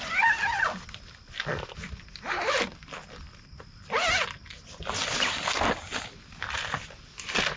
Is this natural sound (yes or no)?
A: yes